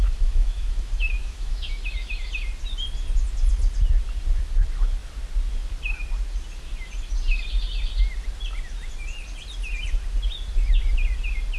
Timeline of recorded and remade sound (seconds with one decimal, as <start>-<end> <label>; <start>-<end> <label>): 0.0-2.3 remade; 2.3-11.6 recorded